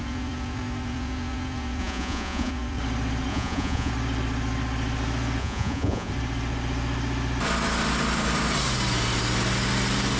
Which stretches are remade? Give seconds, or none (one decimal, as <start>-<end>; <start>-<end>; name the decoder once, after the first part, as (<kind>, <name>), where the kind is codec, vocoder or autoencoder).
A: 1.8-2.5 (vocoder, Vocos); 3.3-3.9; 5.4-6.1